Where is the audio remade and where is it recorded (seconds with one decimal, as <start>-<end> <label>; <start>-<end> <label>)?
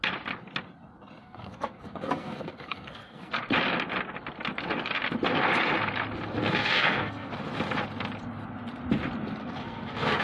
0.0-1.2 recorded; 1.2-3.3 remade; 3.3-6.4 recorded; 6.4-7.3 remade; 7.3-9.4 recorded; 9.4-10.2 remade